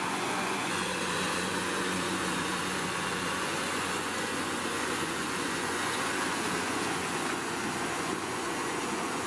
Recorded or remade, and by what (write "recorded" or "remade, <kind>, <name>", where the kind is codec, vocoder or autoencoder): remade, vocoder, Vocos